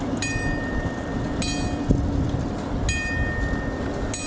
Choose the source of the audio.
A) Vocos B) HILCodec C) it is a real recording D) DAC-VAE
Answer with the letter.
C